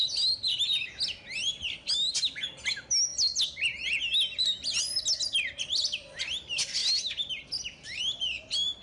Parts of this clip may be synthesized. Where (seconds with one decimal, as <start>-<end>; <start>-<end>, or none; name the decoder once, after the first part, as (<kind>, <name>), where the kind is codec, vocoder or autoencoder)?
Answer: none